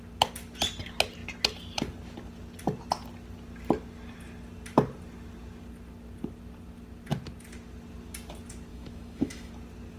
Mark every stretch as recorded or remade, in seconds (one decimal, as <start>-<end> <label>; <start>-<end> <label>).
0.0-8.7 recorded; 8.7-9.5 remade; 9.5-10.0 recorded